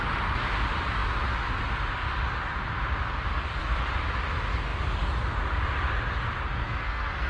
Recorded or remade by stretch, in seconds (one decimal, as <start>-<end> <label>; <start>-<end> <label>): 0.0-6.5 recorded; 6.5-7.3 remade